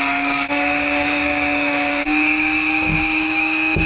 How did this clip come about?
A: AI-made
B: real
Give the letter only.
A